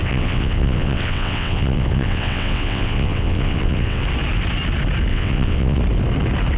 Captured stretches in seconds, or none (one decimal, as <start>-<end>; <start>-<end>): 4.0-5.1; 5.8-6.6